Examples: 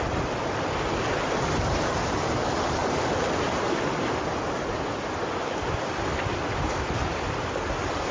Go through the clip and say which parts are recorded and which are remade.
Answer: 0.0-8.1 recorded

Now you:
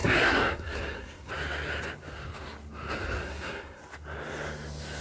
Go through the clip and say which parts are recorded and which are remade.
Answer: 0.0-1.3 remade; 1.3-3.2 recorded; 3.2-3.8 remade; 3.8-5.0 recorded